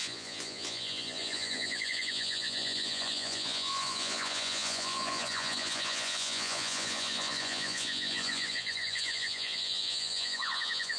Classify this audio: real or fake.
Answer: fake